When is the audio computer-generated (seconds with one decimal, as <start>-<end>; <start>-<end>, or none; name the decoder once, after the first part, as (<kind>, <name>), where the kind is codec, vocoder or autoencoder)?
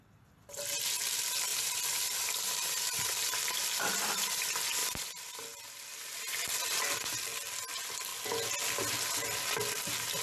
1.5-4.3 (vocoder, BigVGAN v2); 4.8-6.6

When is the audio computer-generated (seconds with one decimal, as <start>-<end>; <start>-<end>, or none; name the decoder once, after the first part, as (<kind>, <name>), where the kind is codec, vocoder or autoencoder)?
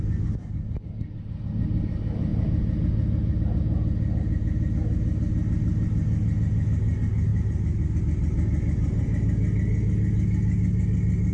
none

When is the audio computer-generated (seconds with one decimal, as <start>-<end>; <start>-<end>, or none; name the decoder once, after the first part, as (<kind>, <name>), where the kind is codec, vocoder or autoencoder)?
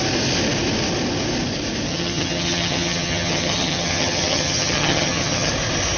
1.9-5.5 (vocoder, HiFi-GAN)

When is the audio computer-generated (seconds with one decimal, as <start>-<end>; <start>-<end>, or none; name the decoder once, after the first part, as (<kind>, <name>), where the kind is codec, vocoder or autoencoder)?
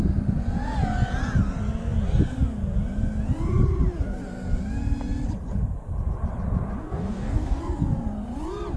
6.8-7.6 (codec, DAC)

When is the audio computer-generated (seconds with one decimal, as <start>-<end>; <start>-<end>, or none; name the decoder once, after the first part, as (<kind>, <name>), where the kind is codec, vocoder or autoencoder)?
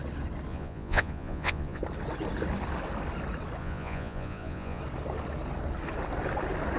0.5-1.8 (vocoder, Vocos); 3.6-4.8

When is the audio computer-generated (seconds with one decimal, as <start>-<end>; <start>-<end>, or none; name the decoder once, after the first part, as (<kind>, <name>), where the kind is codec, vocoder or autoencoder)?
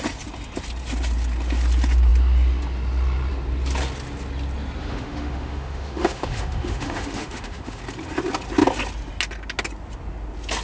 4.8-7.8 (autoencoder, DAC-VAE)